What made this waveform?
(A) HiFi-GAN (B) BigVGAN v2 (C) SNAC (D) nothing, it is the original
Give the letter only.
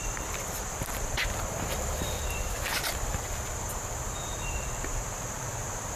B